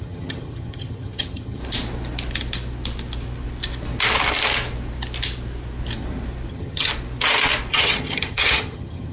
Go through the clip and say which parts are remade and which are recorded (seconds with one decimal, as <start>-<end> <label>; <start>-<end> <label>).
0.0-1.6 remade; 1.6-6.5 recorded; 6.5-6.9 remade; 6.9-7.7 recorded; 7.7-9.1 remade